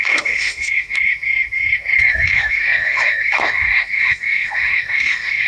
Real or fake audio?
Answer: fake